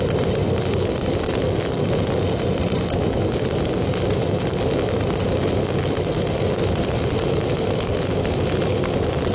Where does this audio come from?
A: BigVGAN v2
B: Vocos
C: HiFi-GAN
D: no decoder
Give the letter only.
D